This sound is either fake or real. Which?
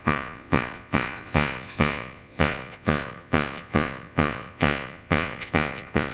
fake